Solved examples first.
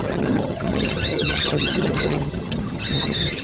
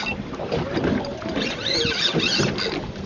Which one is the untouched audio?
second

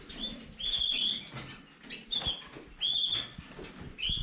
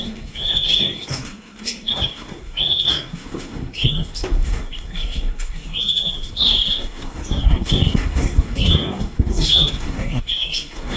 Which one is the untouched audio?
first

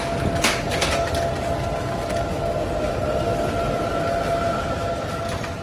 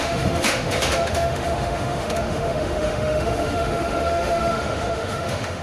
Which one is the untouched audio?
first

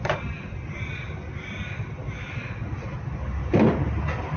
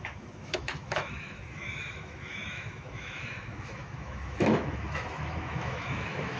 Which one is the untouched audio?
first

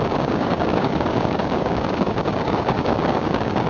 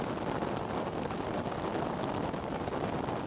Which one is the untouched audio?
second